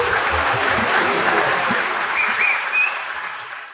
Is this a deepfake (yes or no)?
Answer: yes